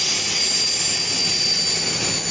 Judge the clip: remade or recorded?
recorded